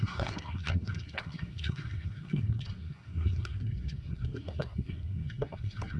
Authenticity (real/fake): fake